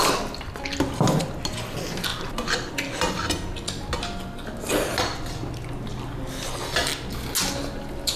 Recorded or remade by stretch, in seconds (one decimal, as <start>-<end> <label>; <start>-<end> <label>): 0.0-8.2 recorded